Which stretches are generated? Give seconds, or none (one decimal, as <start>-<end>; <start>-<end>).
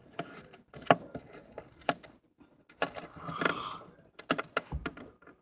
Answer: none